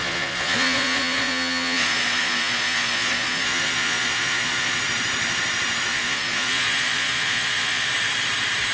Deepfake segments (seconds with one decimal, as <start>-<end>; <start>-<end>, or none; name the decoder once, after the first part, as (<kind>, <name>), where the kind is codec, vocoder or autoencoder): 0.0-4.8 (vocoder, Vocos); 5.9-7.9